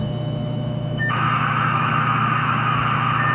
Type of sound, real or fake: fake